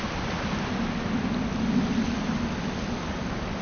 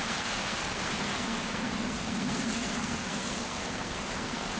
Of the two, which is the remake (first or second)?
second